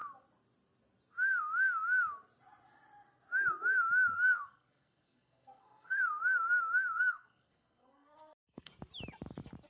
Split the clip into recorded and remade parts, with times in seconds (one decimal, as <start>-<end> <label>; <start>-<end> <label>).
0.0-4.1 recorded; 4.1-6.0 remade; 6.0-6.9 recorded; 6.9-8.7 remade; 8.7-9.7 recorded